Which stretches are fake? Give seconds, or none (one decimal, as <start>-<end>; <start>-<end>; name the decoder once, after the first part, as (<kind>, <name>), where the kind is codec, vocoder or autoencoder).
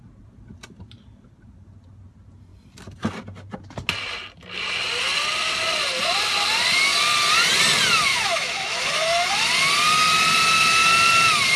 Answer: 8.1-9.3 (autoencoder, DAC-VAE)